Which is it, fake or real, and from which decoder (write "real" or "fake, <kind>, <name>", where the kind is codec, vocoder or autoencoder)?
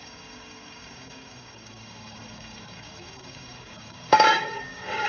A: fake, codec, DAC